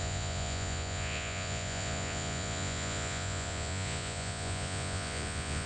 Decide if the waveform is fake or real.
fake